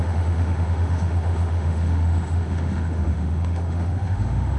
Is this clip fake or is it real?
fake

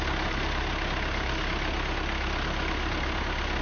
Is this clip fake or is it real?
real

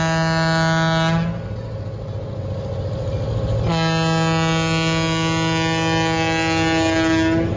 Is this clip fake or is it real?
real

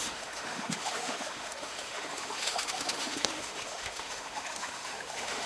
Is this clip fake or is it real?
fake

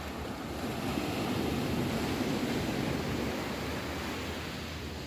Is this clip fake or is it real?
real